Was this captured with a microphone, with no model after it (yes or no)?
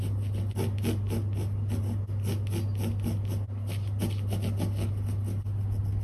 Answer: yes